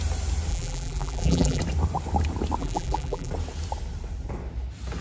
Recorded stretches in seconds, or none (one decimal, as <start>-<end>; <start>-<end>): 0.0-0.5; 1.6-2.6; 3.3-5.0